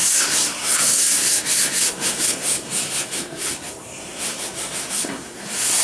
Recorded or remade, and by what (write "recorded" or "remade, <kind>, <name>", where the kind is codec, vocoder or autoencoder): remade, codec, SNAC